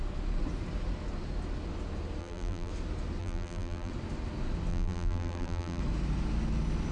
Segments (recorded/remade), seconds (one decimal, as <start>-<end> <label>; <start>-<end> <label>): 0.0-2.2 recorded; 2.2-2.7 remade; 2.7-3.2 recorded; 3.2-3.9 remade; 3.9-4.7 recorded; 4.7-5.8 remade; 5.8-6.9 recorded